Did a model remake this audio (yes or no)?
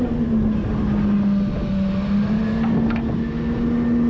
no